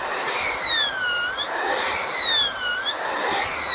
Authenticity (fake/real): real